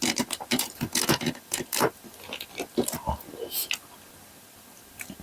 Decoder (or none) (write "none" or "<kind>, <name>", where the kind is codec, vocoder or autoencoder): none